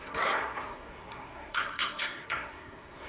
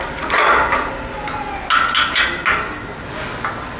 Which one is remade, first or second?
first